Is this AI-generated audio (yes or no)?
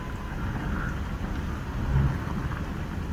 no